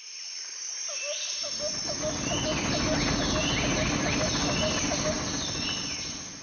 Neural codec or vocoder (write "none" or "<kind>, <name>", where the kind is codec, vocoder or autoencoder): none